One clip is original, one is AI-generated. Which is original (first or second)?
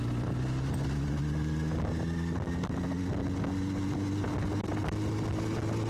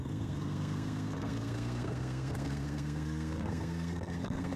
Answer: first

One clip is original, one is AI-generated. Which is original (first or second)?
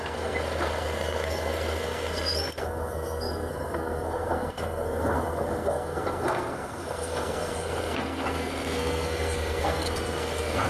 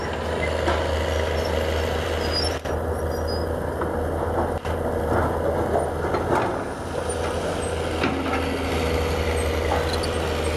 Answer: second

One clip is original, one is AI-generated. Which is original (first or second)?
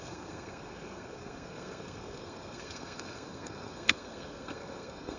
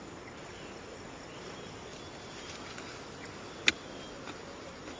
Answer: second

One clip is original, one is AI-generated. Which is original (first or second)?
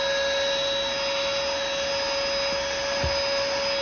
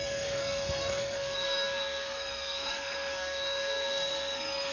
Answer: first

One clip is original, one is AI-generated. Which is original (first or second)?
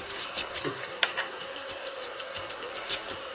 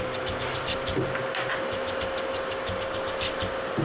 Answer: second